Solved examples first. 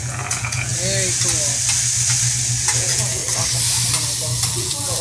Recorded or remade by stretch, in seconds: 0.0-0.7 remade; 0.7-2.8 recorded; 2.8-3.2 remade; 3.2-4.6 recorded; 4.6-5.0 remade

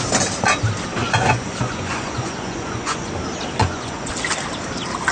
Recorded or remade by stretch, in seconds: 0.0-1.0 recorded; 1.0-3.1 remade; 3.1-3.6 recorded; 3.6-4.1 remade; 4.1-5.1 recorded

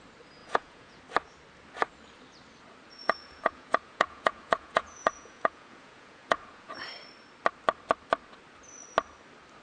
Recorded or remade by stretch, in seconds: 0.0-0.4 recorded; 0.4-1.0 remade; 1.0-3.0 recorded; 3.0-6.7 remade; 6.7-9.6 recorded

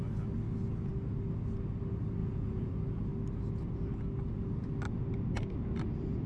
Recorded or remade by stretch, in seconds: 0.0-2.2 recorded; 2.2-2.7 remade; 2.7-6.3 recorded

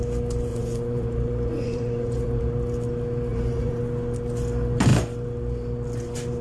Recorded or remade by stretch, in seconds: 0.0-0.5 recorded; 0.5-2.5 remade; 2.5-3.3 recorded; 3.3-3.8 remade; 3.8-6.4 recorded